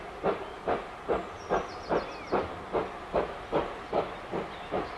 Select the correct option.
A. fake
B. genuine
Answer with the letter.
B